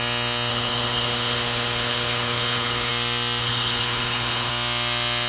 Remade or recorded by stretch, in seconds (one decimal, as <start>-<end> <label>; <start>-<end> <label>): 0.0-0.5 recorded; 0.5-2.9 remade; 2.9-3.4 recorded; 3.4-4.5 remade; 4.5-5.3 recorded

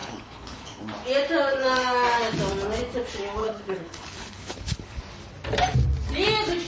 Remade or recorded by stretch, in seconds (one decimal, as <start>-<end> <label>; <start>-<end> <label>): 0.0-0.8 remade; 0.8-3.4 recorded; 3.4-5.0 remade; 5.0-6.7 recorded

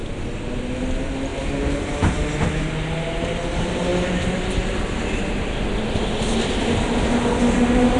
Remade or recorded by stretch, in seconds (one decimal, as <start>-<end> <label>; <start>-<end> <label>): 0.0-8.0 recorded

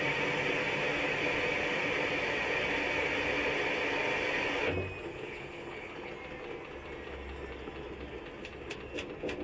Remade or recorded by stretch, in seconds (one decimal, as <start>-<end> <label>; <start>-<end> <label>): 0.0-5.1 recorded; 5.1-6.1 remade; 6.1-9.4 recorded